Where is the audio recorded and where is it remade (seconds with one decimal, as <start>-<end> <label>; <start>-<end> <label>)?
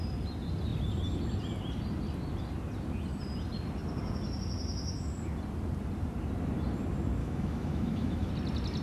0.0-7.2 recorded; 7.2-8.3 remade; 8.3-8.8 recorded